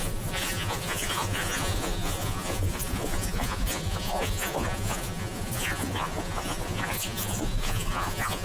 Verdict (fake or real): fake